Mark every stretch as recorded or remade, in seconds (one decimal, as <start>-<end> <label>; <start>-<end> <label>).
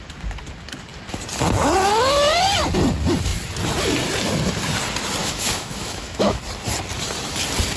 0.0-5.2 recorded; 5.2-6.4 remade; 6.4-7.8 recorded